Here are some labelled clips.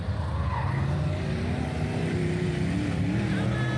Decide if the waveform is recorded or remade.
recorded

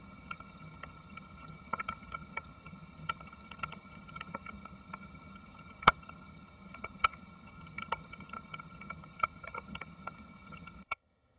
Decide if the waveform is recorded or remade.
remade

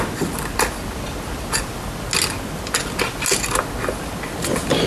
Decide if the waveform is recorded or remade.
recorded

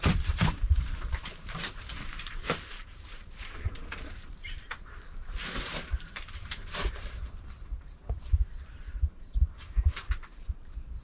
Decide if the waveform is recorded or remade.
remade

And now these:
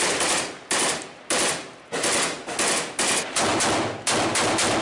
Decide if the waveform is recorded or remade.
recorded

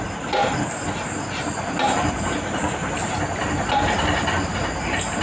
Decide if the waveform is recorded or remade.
recorded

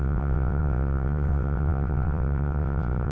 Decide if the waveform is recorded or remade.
remade